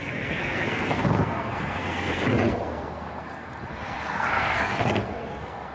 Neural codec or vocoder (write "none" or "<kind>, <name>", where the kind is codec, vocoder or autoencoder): codec, SNAC